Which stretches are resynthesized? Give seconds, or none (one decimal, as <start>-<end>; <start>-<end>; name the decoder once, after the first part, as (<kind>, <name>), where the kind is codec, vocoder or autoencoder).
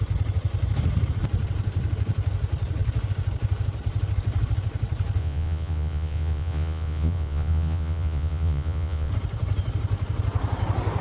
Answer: 5.2-9.1 (vocoder, Vocos)